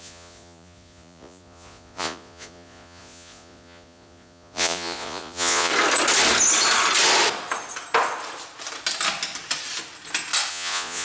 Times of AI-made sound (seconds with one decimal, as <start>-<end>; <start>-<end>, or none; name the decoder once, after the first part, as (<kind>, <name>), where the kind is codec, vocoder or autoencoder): 0.0-5.7 (vocoder, Vocos); 10.5-11.0

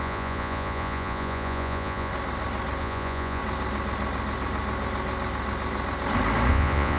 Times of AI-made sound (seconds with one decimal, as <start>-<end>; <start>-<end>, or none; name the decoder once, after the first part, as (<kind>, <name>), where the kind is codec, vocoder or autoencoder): 0.0-2.1 (vocoder, Vocos); 2.8-3.4; 6.5-7.0

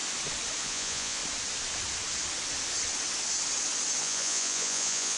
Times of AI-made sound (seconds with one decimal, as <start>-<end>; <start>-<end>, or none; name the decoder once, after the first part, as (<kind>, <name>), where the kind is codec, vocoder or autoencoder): 0.6-1.2 (vocoder, Vocos); 4.0-5.2